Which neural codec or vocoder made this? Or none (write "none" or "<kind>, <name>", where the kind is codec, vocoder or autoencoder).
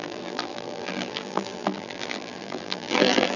vocoder, BigVGAN v2